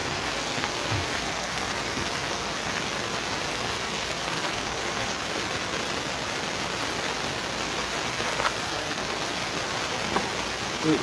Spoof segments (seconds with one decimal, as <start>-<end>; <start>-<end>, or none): 0.0-2.8; 3.5-5.2; 8.1-9.5